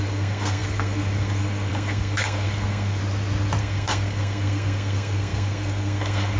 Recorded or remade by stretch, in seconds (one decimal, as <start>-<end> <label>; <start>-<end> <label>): 0.0-3.0 remade; 3.0-3.6 recorded; 3.6-6.4 remade